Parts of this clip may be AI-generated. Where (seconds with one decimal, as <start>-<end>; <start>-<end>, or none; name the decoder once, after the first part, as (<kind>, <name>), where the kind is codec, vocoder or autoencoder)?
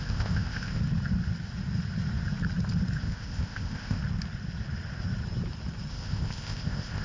0.0-0.8 (codec, ZipCodec); 3.0-4.0; 5.9-7.0